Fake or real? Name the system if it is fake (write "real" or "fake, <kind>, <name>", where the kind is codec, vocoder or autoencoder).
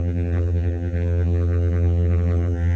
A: fake, vocoder, BigVGAN v2